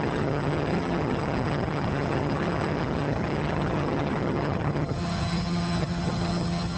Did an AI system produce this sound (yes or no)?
yes